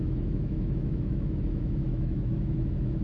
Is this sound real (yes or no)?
no